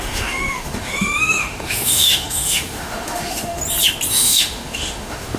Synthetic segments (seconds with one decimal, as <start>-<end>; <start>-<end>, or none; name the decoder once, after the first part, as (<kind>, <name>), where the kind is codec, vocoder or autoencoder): 0.0-3.6 (autoencoder, DAC-VAE); 4.1-5.4